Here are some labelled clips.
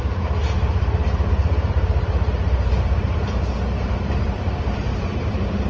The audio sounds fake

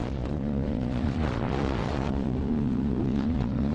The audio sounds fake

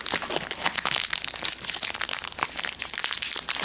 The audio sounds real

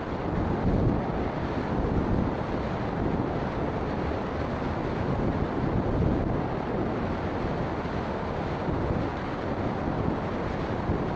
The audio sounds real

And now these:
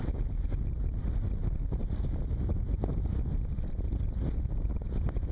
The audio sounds real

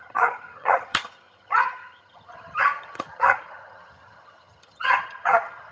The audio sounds fake